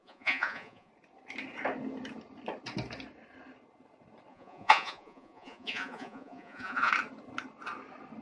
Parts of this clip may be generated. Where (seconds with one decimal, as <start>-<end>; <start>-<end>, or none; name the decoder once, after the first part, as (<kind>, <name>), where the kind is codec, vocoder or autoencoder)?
0.0-0.9 (vocoder, Vocos); 4.3-6.9

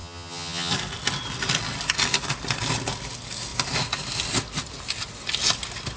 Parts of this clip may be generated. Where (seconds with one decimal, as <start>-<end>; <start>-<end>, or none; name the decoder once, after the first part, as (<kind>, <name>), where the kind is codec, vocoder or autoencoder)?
0.0-0.7 (vocoder, HiFi-GAN)

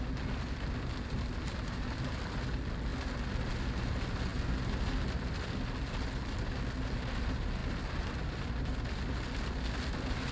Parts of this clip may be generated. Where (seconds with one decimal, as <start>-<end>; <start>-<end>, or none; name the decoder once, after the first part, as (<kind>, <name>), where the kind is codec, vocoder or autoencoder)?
none

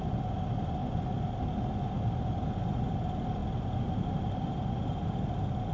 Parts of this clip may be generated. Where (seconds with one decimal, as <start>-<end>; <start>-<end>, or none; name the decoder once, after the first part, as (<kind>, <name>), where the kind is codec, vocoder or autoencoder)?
none